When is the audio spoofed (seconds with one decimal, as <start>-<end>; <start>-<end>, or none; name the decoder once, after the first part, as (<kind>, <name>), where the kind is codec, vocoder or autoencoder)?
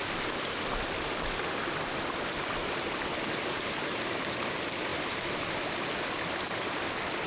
none